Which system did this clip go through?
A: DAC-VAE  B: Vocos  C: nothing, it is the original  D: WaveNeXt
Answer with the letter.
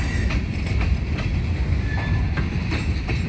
C